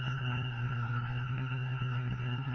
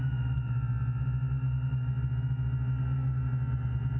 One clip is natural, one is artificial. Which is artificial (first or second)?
first